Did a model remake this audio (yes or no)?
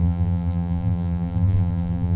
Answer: yes